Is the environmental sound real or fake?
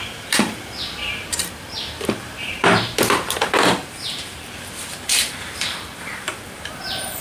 fake